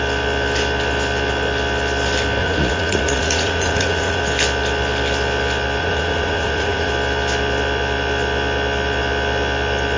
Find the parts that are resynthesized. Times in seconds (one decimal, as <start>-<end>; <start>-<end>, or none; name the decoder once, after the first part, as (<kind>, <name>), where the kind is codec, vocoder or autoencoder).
2.4-4.2 (vocoder, Vocos); 5.8-6.9